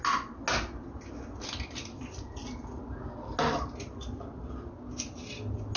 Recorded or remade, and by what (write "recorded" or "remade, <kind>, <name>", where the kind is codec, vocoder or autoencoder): recorded